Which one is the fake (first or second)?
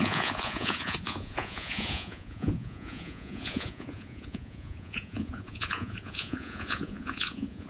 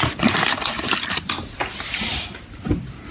first